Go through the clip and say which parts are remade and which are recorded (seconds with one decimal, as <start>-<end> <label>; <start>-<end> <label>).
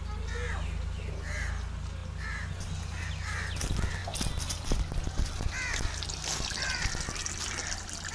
0.0-8.1 recorded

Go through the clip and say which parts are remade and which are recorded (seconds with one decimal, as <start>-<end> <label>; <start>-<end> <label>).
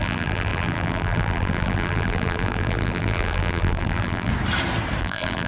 0.0-4.3 remade; 4.3-5.0 recorded; 5.0-5.5 remade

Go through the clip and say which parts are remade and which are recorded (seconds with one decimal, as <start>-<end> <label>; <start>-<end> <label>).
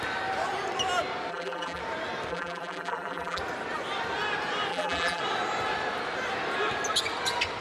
0.0-1.3 recorded; 1.3-1.8 remade; 1.8-2.3 recorded; 2.3-3.4 remade; 3.4-4.7 recorded; 4.7-5.2 remade; 5.2-7.6 recorded